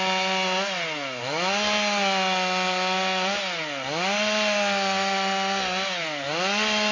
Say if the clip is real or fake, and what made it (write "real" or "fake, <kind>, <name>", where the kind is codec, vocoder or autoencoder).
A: real